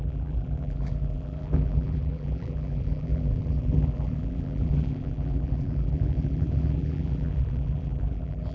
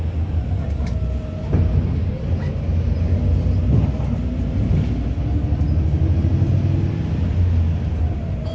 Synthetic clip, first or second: first